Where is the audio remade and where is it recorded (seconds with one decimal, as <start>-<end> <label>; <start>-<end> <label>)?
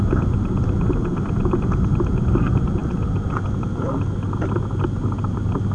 0.0-5.7 recorded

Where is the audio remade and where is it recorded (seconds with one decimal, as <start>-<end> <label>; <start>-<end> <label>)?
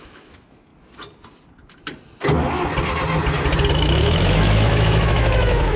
0.0-0.7 remade; 0.7-3.7 recorded; 3.7-5.8 remade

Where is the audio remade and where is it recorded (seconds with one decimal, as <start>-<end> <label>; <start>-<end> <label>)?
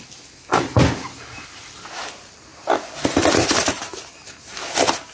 0.0-5.1 recorded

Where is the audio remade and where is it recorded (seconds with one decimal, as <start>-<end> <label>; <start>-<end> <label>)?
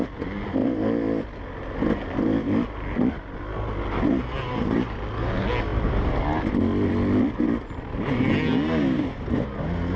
0.0-10.0 recorded